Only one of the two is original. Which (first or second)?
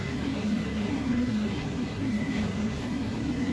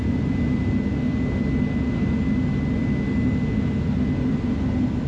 second